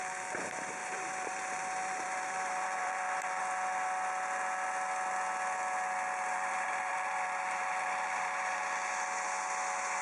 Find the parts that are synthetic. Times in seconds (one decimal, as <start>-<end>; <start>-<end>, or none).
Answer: 0.8-3.4; 6.3-8.6